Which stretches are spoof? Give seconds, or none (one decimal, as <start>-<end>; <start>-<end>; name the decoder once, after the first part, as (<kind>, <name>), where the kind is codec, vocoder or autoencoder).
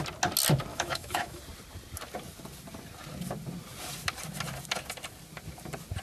0.7-1.4 (autoencoder, DAC-VAE)